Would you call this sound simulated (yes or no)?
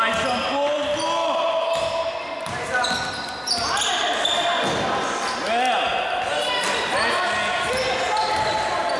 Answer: no